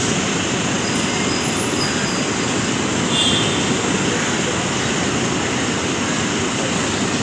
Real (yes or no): yes